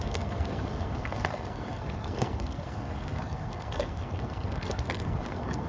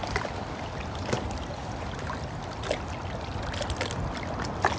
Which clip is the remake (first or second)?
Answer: first